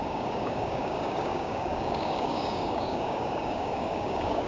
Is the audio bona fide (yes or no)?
no